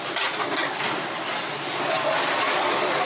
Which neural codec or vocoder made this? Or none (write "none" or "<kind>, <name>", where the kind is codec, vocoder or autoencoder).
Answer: none